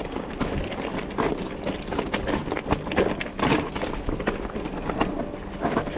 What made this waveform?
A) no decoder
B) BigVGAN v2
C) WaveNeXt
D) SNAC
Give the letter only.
A